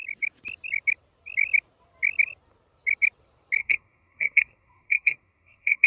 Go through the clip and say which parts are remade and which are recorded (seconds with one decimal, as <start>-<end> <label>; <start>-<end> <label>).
0.0-3.6 recorded; 3.6-5.9 remade